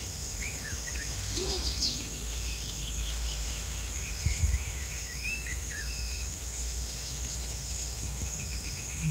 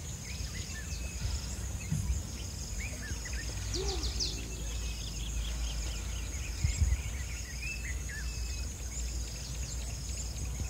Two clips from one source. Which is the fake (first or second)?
first